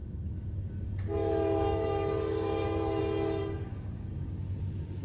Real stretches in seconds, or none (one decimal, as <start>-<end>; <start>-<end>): 3.0-3.4; 4.4-5.0

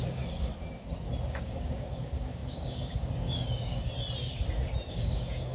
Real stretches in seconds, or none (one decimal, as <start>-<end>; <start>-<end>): 0.5-1.3; 3.9-4.9

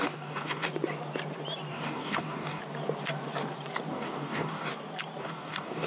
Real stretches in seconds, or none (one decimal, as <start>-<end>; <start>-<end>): 0.7-1.7; 2.6-3.9; 4.7-5.2